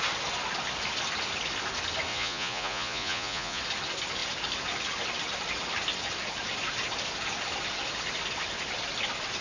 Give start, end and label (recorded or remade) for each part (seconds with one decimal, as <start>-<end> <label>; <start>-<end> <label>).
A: 0.0-2.1 recorded; 2.1-3.6 remade; 3.6-9.4 recorded